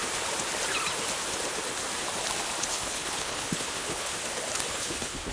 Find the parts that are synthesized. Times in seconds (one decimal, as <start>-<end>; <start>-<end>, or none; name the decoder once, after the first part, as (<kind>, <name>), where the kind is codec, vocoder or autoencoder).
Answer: 2.7-4.1 (codec, HILCodec); 4.7-5.3